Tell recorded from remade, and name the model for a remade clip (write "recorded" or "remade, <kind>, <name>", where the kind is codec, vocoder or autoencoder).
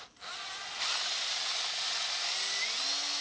recorded